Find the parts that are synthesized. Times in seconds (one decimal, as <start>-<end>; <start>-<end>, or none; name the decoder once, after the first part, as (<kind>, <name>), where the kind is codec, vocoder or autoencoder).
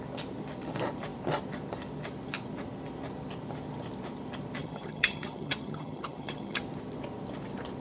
4.6-6.6 (vocoder, HiFi-GAN)